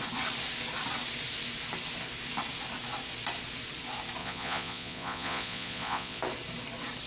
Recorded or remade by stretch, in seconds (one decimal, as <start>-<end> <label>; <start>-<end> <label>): 0.0-4.2 recorded; 4.2-6.2 remade; 6.2-7.1 recorded